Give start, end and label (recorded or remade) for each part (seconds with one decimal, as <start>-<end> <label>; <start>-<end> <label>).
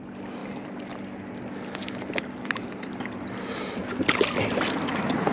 0.0-1.8 recorded; 1.8-3.8 remade; 3.8-5.3 recorded